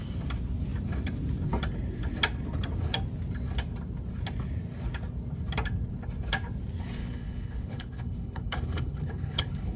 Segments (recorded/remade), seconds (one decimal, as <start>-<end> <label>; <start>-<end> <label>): 0.0-7.0 recorded; 7.0-9.8 remade